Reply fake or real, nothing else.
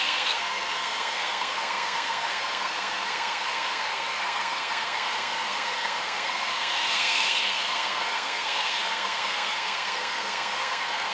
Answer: fake